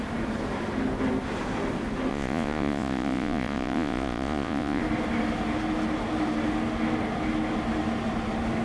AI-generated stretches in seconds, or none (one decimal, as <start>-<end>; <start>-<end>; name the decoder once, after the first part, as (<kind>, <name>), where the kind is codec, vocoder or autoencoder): 2.1-4.8 (vocoder, Vocos)